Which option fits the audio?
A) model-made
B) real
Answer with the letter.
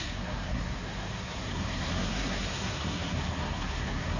A